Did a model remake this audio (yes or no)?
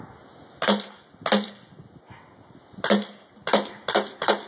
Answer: no